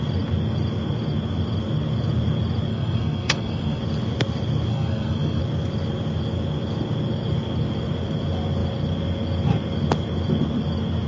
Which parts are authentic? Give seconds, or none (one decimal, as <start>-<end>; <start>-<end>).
0.0-2.7; 3.8-4.7; 5.4-11.1